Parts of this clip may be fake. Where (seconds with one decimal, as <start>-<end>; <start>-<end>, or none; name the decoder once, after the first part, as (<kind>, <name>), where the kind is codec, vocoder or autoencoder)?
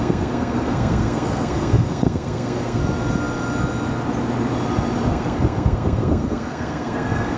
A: 0.0-2.8 (codec, SNAC); 5.1-7.4